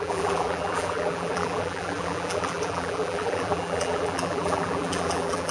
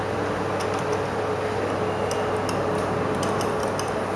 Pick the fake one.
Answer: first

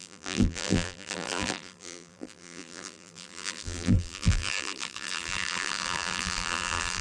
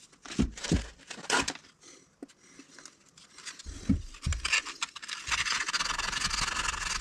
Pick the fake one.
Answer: first